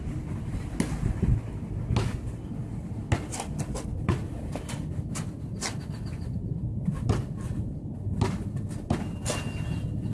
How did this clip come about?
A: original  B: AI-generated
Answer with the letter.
A